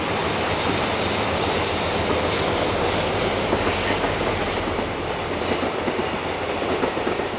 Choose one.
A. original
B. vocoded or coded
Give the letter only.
A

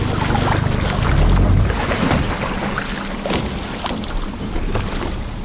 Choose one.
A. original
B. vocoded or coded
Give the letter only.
A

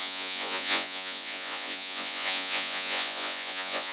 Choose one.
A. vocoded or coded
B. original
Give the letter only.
A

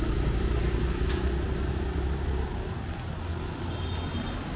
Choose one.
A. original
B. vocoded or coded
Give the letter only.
A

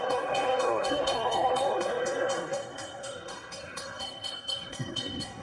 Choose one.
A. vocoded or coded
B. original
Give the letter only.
A